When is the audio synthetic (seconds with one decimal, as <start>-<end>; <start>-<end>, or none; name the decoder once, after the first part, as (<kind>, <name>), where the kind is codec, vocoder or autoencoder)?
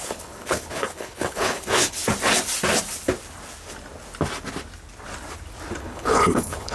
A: 0.0-2.0 (codec, HILCodec); 5.8-6.7